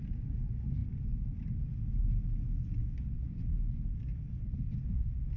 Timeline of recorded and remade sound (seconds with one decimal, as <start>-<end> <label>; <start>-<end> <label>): 0.0-4.1 recorded; 4.1-5.4 remade